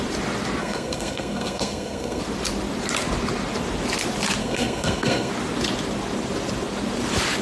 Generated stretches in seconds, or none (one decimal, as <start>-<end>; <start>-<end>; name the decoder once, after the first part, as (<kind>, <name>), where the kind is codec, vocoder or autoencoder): 0.6-2.2 (codec, SNAC); 4.4-5.3